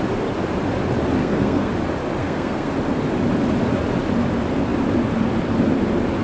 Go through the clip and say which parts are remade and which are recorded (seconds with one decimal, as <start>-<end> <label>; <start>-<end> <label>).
0.0-1.2 recorded; 1.2-1.7 remade; 1.7-2.2 recorded; 2.2-2.7 remade; 2.7-6.2 recorded